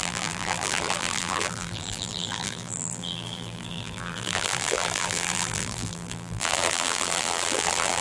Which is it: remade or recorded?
remade